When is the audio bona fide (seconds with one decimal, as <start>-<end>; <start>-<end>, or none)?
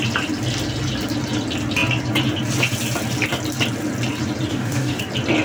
0.0-4.5; 5.0-5.4